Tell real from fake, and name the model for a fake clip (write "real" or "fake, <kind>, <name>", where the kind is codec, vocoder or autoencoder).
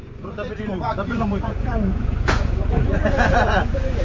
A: fake, vocoder, Vocos